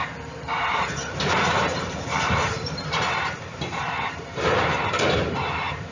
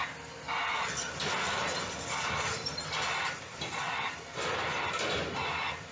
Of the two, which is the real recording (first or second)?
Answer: second